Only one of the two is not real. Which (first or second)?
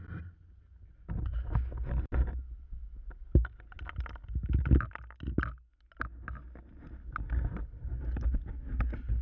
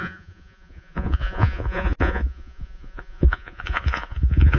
second